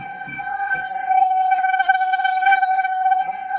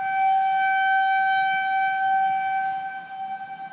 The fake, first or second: first